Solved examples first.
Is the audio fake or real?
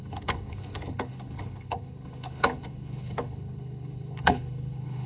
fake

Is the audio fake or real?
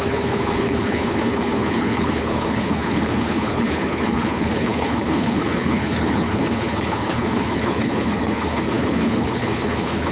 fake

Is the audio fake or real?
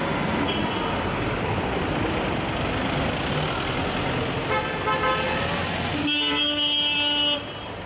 real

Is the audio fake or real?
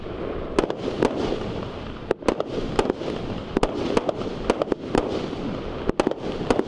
real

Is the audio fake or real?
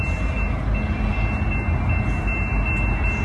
real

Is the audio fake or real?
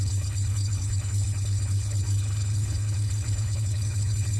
fake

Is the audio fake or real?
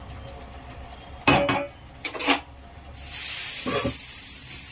real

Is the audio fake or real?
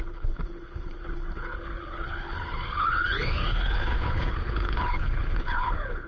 fake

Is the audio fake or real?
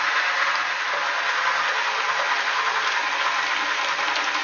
real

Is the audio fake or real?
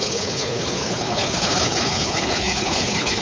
fake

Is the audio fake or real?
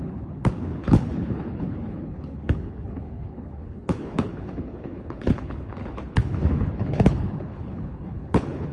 fake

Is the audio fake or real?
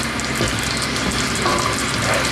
real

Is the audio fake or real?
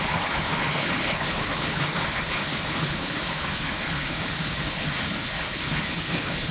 fake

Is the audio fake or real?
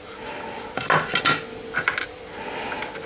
real